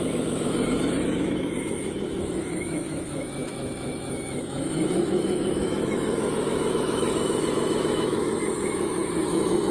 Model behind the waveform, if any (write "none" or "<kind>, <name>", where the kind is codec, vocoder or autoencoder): autoencoder, DAC-VAE